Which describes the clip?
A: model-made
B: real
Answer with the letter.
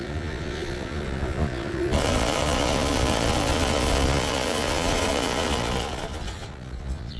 A